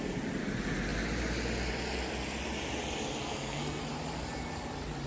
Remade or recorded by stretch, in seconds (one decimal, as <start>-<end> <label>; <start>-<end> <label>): 0.0-3.2 recorded; 3.2-3.8 remade; 3.8-5.1 recorded